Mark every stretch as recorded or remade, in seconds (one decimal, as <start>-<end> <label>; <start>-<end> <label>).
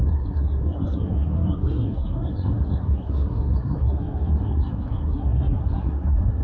0.0-6.4 remade